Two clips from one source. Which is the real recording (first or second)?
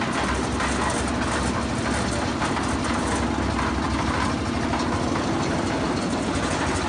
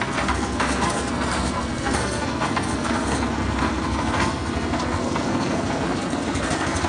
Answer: first